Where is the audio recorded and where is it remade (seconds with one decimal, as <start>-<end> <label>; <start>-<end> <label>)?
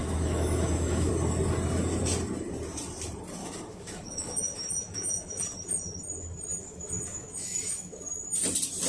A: 0.0-1.1 remade; 1.1-3.4 recorded; 3.4-5.4 remade; 5.4-6.6 recorded; 6.6-8.0 remade; 8.0-8.9 recorded